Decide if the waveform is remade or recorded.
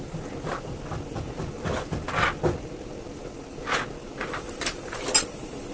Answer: recorded